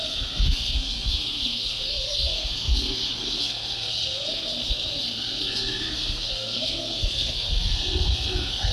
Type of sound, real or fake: fake